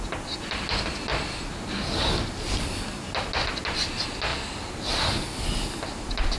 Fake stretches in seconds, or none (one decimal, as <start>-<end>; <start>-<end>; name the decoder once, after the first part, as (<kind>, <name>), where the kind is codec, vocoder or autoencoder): 4.3-4.9 (vocoder, BigVGAN v2)

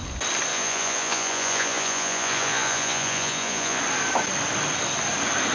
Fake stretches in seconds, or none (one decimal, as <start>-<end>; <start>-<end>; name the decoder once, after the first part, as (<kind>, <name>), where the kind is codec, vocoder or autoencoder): 0.5-3.8 (vocoder, Vocos)

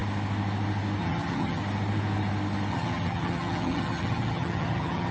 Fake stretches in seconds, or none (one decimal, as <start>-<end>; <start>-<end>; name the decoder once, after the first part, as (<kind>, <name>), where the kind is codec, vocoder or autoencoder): 1.0-1.6 (vocoder, HiFi-GAN); 2.7-5.1